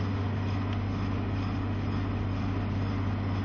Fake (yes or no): no